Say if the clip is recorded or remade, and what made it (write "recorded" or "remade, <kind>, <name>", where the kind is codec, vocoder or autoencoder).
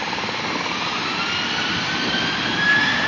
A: recorded